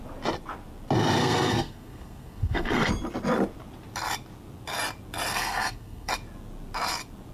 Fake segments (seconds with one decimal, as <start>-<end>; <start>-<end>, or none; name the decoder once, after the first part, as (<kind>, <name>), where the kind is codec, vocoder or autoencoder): 1.2-2.9 (codec, SNAC); 5.3-6.1

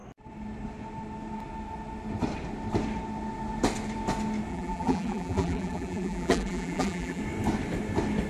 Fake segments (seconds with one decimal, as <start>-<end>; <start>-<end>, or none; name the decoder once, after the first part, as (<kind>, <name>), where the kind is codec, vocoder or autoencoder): 4.5-7.2 (vocoder, BigVGAN v2)

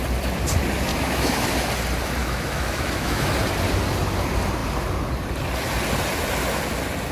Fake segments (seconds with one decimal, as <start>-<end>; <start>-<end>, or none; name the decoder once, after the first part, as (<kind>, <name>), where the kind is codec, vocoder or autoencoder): 0.9-1.5 (autoencoder, DAC-VAE); 2.2-3.3

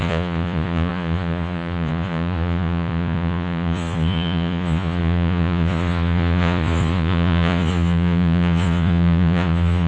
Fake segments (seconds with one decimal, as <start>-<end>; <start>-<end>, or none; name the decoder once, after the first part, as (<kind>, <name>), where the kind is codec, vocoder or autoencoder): 0.0-9.9 (vocoder, Vocos)

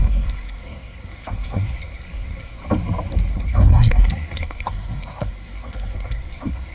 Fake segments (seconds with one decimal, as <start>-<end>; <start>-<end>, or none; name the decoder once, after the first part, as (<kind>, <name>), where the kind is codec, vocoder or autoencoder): 0.0-2.6 (codec, SNAC); 3.3-6.7

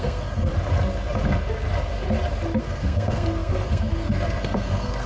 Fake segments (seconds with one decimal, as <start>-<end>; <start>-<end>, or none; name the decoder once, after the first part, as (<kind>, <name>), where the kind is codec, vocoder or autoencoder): 0.0-0.5 (codec, SNAC); 2.6-5.1